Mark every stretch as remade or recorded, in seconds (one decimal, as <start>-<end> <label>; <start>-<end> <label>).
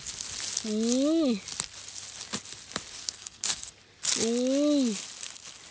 0.0-3.0 recorded; 3.0-3.7 remade; 3.7-5.7 recorded